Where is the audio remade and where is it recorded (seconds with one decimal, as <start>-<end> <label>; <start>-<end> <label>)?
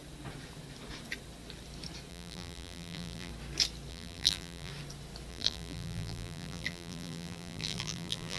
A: 0.0-2.1 recorded; 2.1-3.3 remade; 3.3-3.9 recorded; 3.9-4.7 remade; 4.7-5.3 recorded; 5.3-8.4 remade